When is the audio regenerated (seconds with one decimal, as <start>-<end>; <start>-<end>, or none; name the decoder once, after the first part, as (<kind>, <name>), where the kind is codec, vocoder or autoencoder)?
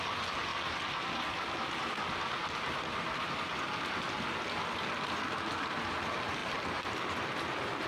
none